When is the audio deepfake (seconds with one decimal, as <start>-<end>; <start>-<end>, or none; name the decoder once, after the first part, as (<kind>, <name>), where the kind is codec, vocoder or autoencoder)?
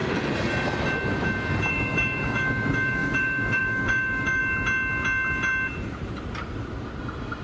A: 1.7-4.4 (autoencoder, DAC-VAE); 7.0-7.4